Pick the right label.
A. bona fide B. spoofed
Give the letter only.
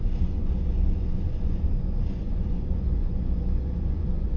B